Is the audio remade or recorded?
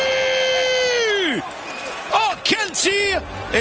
recorded